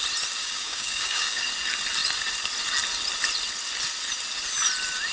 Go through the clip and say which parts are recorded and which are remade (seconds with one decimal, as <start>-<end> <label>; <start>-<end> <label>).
0.0-0.4 recorded; 0.4-1.5 remade; 1.5-5.1 recorded